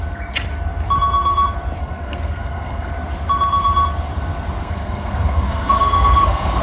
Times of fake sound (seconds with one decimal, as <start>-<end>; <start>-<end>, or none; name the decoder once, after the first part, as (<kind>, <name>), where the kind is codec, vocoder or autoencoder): 1.8-2.9 (codec, SNAC); 4.6-6.6